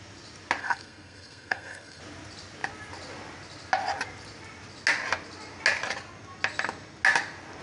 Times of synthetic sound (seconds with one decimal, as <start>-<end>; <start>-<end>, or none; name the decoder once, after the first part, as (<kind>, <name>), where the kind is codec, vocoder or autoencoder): 0.6-2.0 (codec, SNAC)